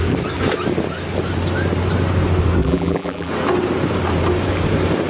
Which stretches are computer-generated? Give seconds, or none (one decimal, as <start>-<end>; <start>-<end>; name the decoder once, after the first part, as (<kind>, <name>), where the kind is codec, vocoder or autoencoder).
2.6-3.3 (vocoder, BigVGAN v2)